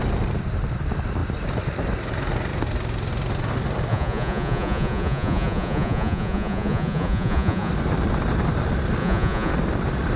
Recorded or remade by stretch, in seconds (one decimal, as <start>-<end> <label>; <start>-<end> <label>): 0.0-3.9 recorded; 3.9-7.7 remade; 7.7-9.0 recorded; 9.0-9.5 remade; 9.5-10.2 recorded